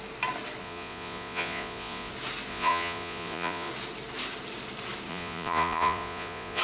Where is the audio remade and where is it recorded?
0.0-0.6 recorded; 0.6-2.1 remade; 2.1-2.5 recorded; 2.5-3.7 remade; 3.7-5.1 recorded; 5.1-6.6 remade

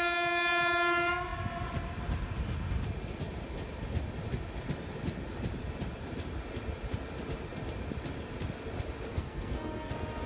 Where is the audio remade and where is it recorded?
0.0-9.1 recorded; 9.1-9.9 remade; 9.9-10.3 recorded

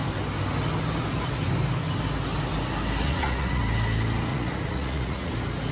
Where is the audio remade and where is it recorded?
0.0-3.0 recorded; 3.0-3.6 remade; 3.6-4.3 recorded; 4.3-5.3 remade; 5.3-5.7 recorded